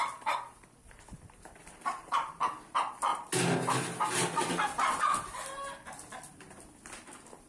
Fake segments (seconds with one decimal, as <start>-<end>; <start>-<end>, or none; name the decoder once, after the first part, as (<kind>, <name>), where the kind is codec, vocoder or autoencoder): 0.0-2.5 (vocoder, BigVGAN v2)